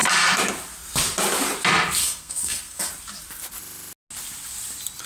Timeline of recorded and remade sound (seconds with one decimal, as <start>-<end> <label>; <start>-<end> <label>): 0.0-2.0 recorded; 2.0-2.9 remade; 2.9-5.1 recorded